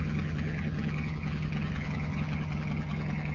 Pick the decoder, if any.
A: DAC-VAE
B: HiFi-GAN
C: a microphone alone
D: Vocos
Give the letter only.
B